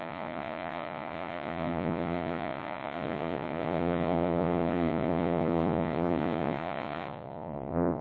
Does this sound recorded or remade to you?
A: remade